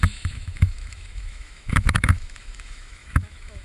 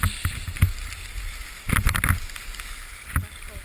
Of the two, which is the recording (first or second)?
second